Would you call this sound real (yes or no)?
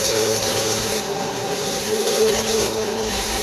no